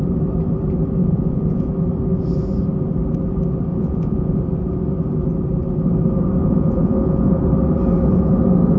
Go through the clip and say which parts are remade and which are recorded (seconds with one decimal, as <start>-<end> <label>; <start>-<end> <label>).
0.0-1.0 recorded; 1.0-1.7 remade; 1.7-3.7 recorded; 3.7-4.4 remade; 4.4-6.4 recorded; 6.4-7.3 remade; 7.3-8.8 recorded